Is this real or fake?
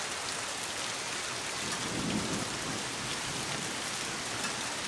real